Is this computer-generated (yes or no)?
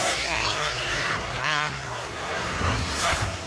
yes